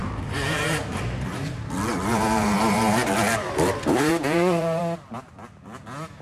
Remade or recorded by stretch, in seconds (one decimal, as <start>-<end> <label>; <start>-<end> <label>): 0.0-1.5 remade; 1.5-1.9 recorded; 1.9-4.8 remade; 4.8-6.2 recorded